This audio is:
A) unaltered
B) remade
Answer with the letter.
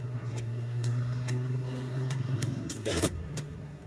B